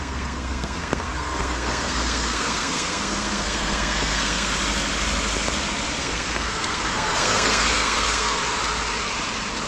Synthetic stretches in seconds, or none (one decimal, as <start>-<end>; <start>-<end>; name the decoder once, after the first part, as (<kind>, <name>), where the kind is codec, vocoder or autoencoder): 0.0-4.5 (codec, SNAC); 6.0-8.4